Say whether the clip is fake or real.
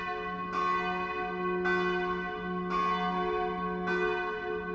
real